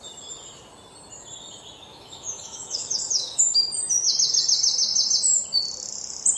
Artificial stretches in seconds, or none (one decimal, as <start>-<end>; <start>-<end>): 1.9-3.4